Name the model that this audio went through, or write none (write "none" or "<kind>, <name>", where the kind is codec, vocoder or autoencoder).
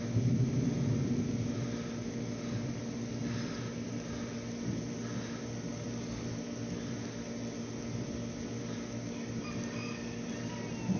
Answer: none